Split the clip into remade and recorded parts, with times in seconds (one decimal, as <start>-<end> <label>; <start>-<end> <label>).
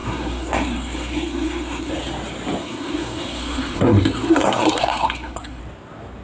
0.0-1.9 remade; 1.9-2.6 recorded; 2.6-5.6 remade; 5.6-6.2 recorded